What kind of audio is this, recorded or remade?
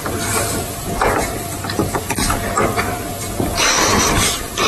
recorded